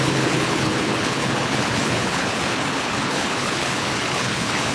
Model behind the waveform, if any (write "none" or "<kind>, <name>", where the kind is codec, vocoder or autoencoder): codec, HILCodec